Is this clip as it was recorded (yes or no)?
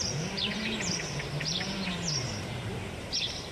no